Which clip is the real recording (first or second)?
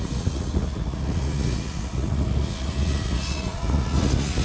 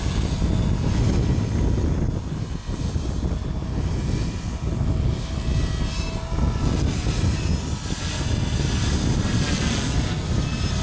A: second